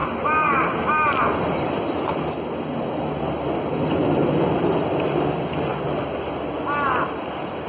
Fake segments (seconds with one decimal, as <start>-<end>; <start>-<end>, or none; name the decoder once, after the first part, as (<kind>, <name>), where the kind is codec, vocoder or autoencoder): none